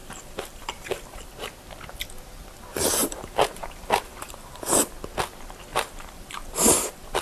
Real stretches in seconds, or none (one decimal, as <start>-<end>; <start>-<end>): 1.3-3.0; 4.6-5.7